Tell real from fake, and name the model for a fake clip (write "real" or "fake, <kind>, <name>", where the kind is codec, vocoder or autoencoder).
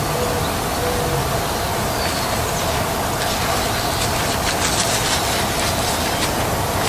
real